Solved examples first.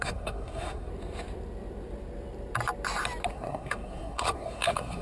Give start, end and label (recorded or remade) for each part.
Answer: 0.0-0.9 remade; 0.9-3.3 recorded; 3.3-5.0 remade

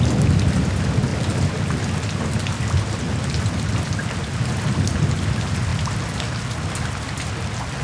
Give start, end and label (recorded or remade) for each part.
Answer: 0.0-7.8 recorded

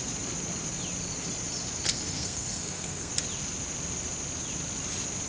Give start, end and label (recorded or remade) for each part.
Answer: 0.0-1.9 recorded; 1.9-3.1 remade; 3.1-5.3 recorded

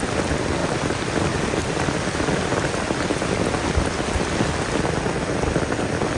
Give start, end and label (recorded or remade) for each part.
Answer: 0.0-6.2 recorded

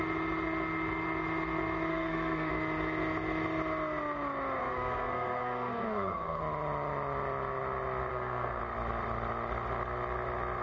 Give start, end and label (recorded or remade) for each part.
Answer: 0.0-1.9 recorded; 1.9-2.5 remade; 2.5-4.6 recorded; 4.6-6.4 remade; 6.4-8.1 recorded; 8.1-8.6 remade; 8.6-10.6 recorded

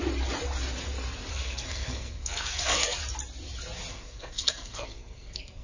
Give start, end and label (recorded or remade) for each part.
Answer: 0.0-1.3 recorded; 1.3-3.0 remade; 3.0-3.9 recorded; 3.9-5.6 remade

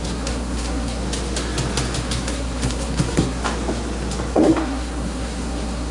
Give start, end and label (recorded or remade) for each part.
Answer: 0.0-1.0 remade; 1.0-2.0 recorded; 2.0-3.4 remade; 3.4-4.3 recorded; 4.3-5.9 remade

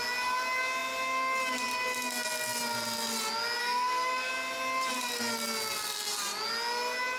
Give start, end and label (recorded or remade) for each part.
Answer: 0.0-3.6 recorded; 3.6-4.3 remade; 4.3-7.2 recorded